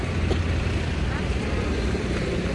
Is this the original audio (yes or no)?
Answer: yes